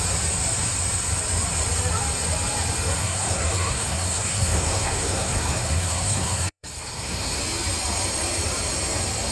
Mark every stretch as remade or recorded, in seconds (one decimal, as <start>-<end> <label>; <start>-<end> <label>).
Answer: 0.0-3.0 recorded; 3.0-7.4 remade; 7.4-9.3 recorded